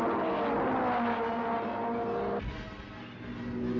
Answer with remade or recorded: recorded